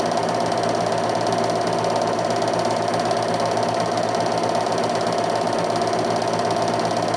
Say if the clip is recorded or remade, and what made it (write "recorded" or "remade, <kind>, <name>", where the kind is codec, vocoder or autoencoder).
recorded